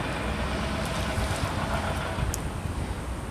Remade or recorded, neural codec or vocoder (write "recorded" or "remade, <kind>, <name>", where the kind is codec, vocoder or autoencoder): recorded